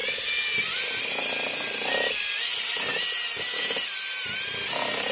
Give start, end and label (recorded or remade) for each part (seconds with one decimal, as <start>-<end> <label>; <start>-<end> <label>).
0.0-5.1 recorded